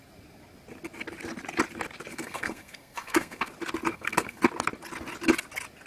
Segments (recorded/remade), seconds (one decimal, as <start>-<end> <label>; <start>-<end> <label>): 0.0-2.1 recorded; 2.1-3.5 remade; 3.5-3.9 recorded; 3.9-4.4 remade; 4.4-5.9 recorded